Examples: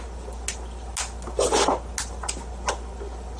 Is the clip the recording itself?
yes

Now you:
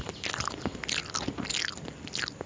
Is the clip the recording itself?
yes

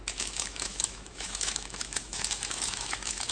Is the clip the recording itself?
no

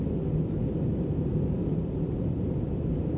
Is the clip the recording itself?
no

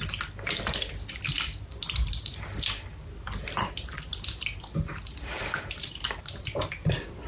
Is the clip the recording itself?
yes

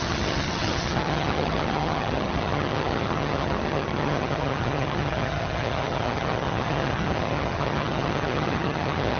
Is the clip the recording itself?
no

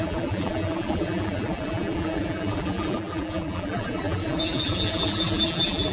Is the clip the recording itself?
no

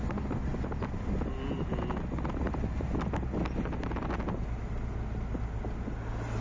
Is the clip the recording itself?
yes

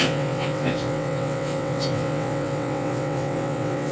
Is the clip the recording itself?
no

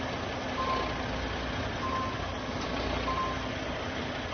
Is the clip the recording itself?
yes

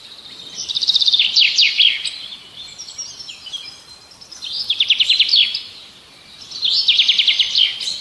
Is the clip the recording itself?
yes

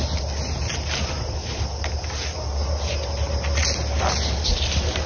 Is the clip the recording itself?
yes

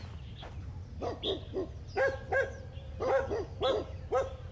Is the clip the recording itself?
yes